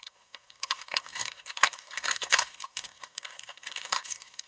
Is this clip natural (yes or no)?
no